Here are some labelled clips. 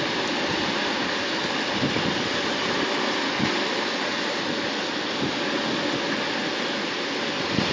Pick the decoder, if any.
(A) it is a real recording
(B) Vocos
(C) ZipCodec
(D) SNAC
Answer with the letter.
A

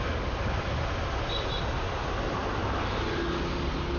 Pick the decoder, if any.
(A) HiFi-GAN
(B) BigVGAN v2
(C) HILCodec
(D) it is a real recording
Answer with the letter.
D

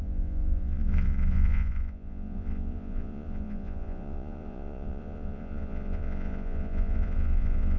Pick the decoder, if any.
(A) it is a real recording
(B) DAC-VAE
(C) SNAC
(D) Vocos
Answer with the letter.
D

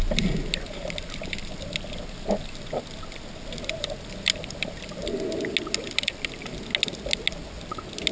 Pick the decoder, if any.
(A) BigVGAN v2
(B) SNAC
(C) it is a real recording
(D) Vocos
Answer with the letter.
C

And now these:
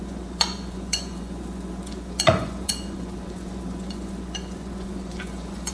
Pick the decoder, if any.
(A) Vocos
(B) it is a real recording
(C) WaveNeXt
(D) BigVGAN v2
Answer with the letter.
A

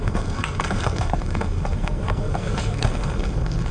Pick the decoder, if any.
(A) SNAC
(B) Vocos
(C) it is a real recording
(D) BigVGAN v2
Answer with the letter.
A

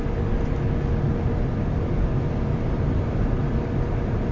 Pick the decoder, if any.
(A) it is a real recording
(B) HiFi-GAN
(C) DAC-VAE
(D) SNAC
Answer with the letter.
A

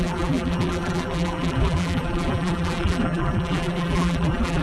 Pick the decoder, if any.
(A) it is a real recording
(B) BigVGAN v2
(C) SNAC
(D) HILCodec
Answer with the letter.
B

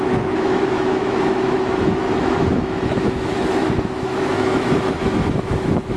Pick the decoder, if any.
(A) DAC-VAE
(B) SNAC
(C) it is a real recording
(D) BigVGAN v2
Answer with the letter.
A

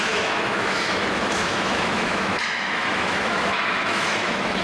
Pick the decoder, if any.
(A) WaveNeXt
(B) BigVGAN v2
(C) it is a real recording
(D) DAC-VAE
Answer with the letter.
D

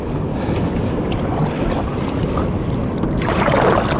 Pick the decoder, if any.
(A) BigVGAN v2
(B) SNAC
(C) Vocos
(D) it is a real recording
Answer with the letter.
D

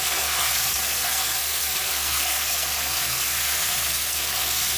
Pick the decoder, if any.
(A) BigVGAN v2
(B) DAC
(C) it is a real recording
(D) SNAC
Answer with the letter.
D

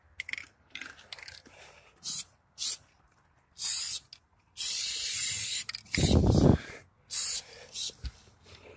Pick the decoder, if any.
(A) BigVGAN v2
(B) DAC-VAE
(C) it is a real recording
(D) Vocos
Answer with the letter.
C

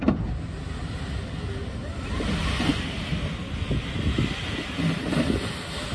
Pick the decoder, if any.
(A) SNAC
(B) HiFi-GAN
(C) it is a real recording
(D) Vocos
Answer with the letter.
C